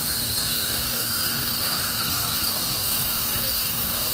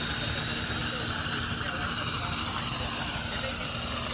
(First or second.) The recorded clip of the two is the second